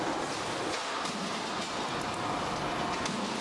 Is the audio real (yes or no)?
yes